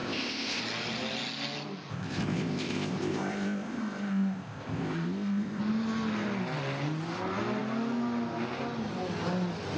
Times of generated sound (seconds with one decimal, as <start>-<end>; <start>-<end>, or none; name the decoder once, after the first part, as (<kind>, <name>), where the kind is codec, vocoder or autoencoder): 0.0-0.6 (codec, ZipCodec); 1.9-5.6